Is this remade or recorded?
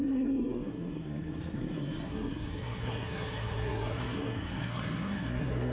remade